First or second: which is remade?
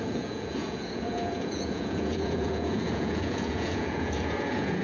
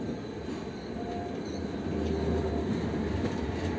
first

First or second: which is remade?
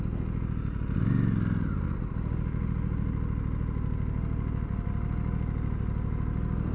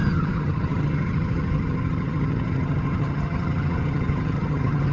second